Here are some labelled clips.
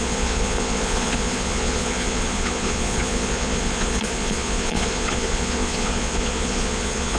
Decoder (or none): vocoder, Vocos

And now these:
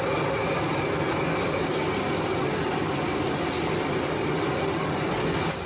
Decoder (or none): none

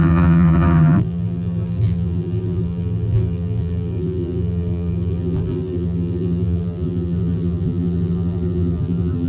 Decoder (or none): vocoder, BigVGAN v2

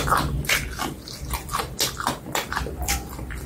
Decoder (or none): none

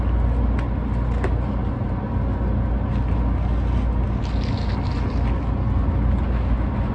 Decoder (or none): none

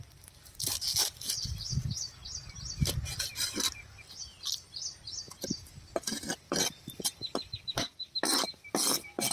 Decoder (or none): none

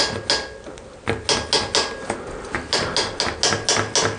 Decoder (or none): none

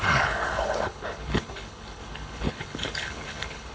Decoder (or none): codec, HILCodec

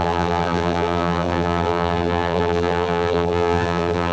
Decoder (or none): vocoder, BigVGAN v2